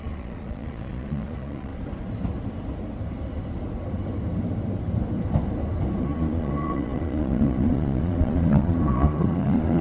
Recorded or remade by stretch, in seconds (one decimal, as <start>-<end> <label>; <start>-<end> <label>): 0.0-1.7 remade; 1.7-6.0 recorded; 6.0-9.8 remade